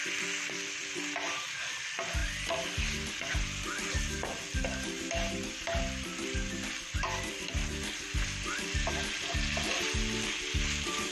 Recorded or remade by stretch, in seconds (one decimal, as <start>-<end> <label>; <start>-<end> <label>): 0.0-11.1 recorded